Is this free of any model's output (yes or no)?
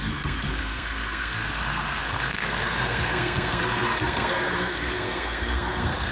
no